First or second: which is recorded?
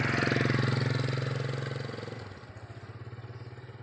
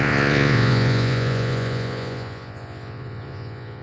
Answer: first